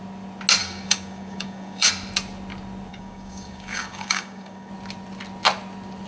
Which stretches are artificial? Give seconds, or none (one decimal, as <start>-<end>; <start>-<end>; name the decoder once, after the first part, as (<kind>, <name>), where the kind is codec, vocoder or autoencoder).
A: 0.6-1.9 (codec, DAC); 2.9-4.7